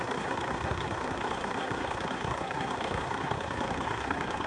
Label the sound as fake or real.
fake